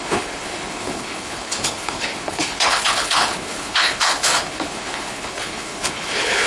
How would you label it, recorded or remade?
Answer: remade